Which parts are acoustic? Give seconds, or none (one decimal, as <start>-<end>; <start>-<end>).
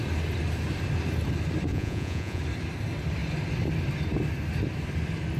0.0-1.7; 2.4-5.4